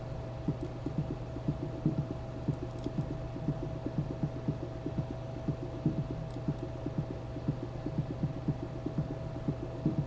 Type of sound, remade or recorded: recorded